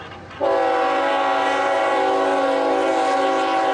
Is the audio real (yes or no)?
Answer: yes